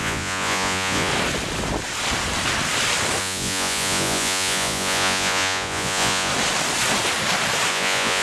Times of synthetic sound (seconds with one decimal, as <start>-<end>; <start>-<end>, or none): 0.0-1.1; 3.2-6.3; 7.7-8.2

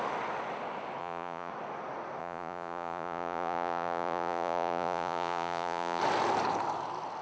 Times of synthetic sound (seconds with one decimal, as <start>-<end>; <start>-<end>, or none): 1.0-1.5; 2.2-6.0